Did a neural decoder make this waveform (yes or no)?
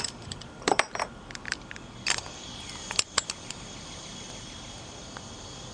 yes